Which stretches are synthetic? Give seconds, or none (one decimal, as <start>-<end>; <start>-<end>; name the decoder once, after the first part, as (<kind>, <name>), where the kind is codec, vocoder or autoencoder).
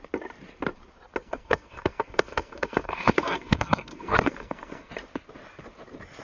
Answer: 1.2-4.9 (codec, SNAC)